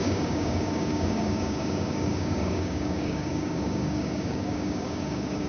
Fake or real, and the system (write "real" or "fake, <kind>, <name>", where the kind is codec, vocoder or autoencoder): fake, codec, DAC